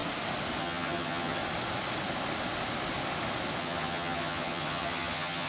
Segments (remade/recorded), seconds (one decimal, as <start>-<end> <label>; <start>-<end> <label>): 0.0-0.6 recorded; 0.6-1.4 remade; 1.4-3.6 recorded; 3.6-5.5 remade